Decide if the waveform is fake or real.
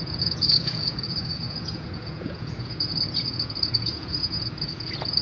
fake